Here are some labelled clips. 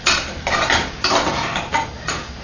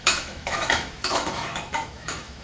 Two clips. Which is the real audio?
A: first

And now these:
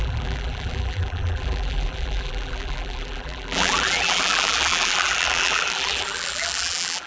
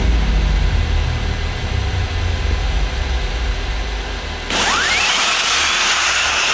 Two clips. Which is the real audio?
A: second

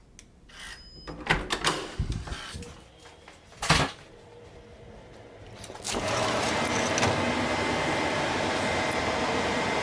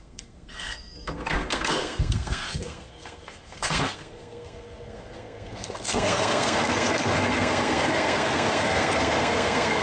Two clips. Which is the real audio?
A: first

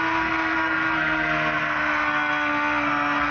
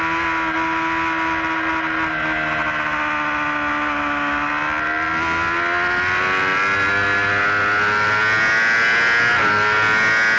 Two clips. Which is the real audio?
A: second